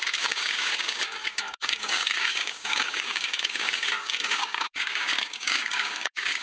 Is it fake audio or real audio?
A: fake